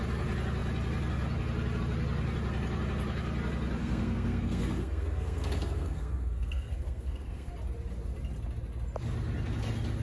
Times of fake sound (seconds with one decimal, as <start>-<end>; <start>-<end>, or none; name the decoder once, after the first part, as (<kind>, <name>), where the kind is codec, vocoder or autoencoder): 3.8-7.5 (codec, SNAC)